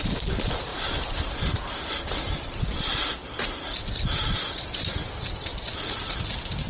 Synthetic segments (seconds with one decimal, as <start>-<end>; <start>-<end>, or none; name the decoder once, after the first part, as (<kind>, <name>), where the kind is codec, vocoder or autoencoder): 0.7-2.1 (vocoder, BigVGAN v2); 5.5-6.3